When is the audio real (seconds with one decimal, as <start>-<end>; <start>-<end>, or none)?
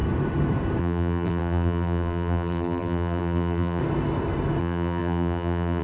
0.0-0.8; 3.8-4.6